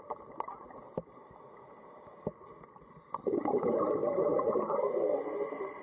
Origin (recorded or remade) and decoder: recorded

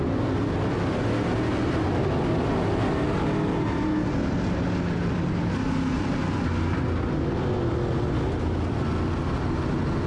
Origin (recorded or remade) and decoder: recorded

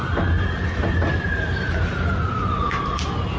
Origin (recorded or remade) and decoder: recorded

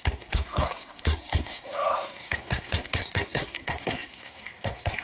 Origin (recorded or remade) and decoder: remade, codec, SNAC